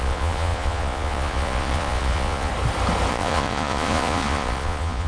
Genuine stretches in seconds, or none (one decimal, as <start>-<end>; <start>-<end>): 2.5-3.1